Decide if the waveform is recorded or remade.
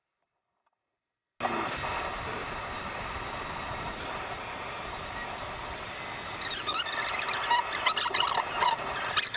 recorded